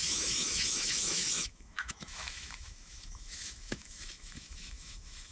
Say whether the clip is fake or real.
fake